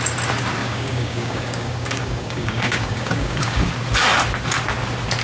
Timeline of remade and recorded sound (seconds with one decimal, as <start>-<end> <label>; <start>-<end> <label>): 0.0-0.6 recorded; 0.6-3.7 remade; 3.7-5.2 recorded